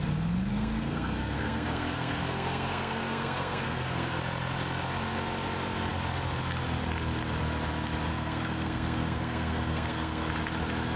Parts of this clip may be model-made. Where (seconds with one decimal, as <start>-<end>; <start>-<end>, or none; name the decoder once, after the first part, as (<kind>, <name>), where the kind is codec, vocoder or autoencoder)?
0.5-4.2 (codec, SNAC); 8.1-10.3